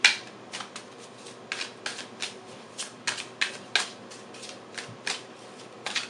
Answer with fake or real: real